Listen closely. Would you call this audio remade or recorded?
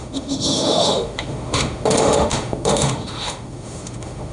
remade